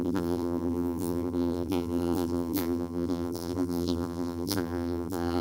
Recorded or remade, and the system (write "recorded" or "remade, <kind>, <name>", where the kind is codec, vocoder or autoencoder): remade, vocoder, BigVGAN v2